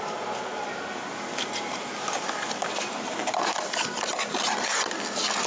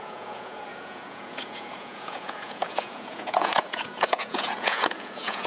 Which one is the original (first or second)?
first